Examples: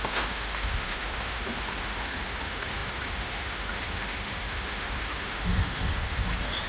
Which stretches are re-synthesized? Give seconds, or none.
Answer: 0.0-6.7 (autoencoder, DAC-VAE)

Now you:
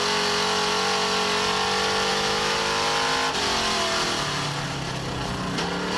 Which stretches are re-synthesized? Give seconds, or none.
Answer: 2.1-2.6 (autoencoder, DAC-VAE)

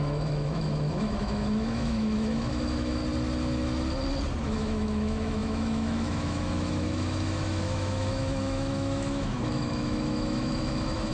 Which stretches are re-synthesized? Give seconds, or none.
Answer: 0.0-3.0 (autoencoder, DAC-VAE); 4.4-11.1

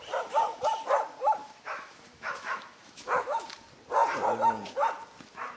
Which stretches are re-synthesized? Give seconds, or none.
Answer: 1.4-3.4 (autoencoder, DAC-VAE)

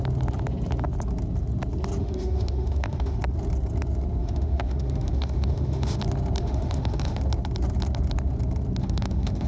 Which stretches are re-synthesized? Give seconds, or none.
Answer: 2.0-3.2 (autoencoder, DAC-VAE); 4.2-6.0; 6.4-7.2; 8.8-9.5